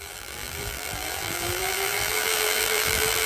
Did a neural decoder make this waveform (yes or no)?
yes